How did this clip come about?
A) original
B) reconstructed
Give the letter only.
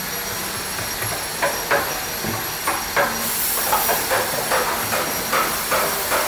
A